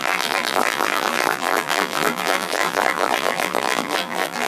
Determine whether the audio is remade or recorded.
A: remade